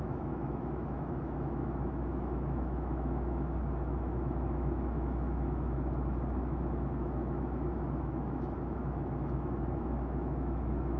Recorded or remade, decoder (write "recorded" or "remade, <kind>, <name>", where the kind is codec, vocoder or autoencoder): remade, autoencoder, DAC-VAE